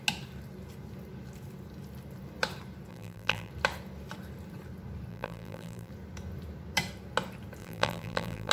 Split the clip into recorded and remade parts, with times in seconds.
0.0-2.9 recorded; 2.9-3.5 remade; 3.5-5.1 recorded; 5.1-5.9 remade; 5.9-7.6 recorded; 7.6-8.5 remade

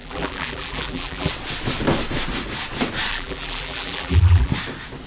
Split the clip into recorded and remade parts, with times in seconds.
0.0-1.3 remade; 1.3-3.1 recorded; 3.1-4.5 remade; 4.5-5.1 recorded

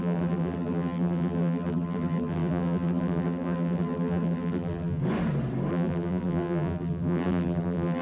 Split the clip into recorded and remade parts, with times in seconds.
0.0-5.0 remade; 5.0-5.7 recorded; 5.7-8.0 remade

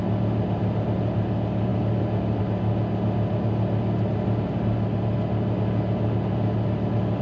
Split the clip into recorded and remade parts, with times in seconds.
0.0-7.2 recorded

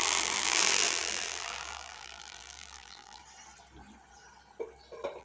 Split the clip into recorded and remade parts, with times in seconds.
0.0-3.2 remade; 3.2-5.2 recorded

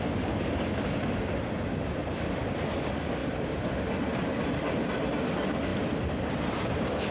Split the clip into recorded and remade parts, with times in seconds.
0.0-2.0 recorded; 2.0-2.7 remade; 2.7-3.2 recorded; 3.2-4.9 remade; 4.9-7.1 recorded

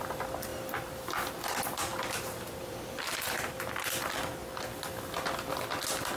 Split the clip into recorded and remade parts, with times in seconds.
0.0-0.5 recorded; 0.5-1.3 remade; 1.3-1.9 recorded; 1.9-3.5 remade; 3.5-4.4 recorded; 4.4-4.9 remade; 4.9-6.2 recorded